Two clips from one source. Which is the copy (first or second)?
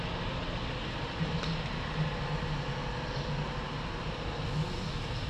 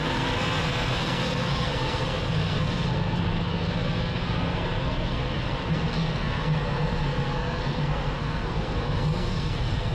second